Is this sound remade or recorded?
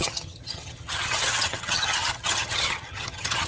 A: remade